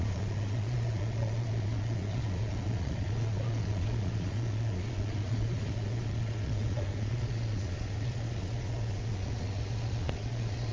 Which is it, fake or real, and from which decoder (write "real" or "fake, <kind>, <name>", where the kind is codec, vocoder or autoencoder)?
fake, vocoder, Vocos